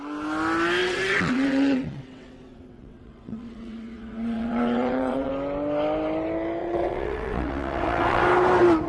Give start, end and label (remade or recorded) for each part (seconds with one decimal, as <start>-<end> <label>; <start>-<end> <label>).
0.0-0.8 recorded; 0.8-5.3 remade; 5.3-6.6 recorded; 6.6-8.2 remade; 8.2-8.9 recorded